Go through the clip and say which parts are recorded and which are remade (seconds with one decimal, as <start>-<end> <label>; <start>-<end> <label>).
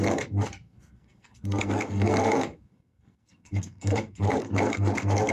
0.0-5.3 remade